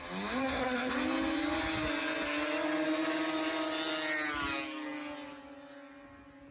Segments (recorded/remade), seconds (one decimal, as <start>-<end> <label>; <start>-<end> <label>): 0.0-0.4 recorded; 0.4-0.9 remade; 0.9-6.5 recorded